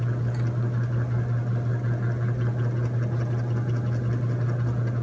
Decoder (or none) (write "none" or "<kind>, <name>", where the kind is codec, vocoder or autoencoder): none